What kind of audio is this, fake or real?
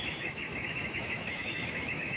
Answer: fake